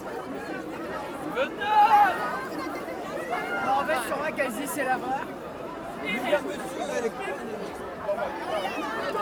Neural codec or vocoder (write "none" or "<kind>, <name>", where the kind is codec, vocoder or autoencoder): vocoder, BigVGAN v2